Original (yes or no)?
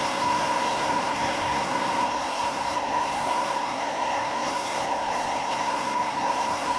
no